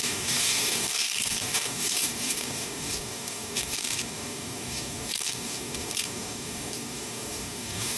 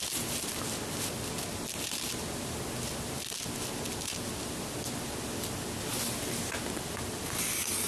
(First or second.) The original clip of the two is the second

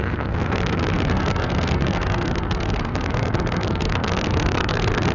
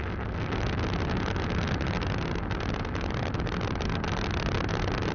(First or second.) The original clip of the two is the second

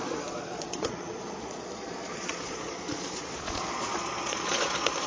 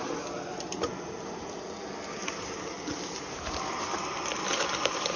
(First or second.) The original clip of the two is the second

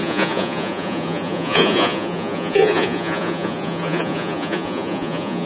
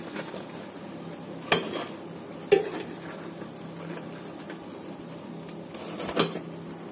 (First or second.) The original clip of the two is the second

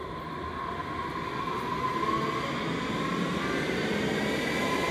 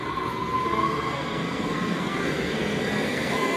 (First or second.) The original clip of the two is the first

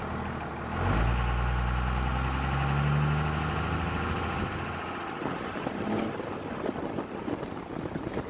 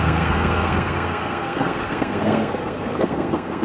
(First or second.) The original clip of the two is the first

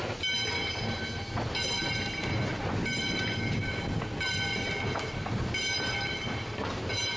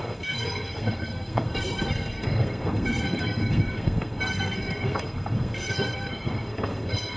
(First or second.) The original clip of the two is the first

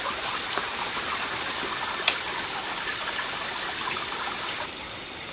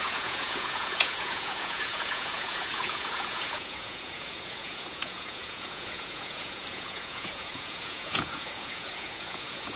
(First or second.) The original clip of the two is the first